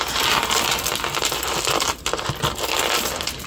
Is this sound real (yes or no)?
yes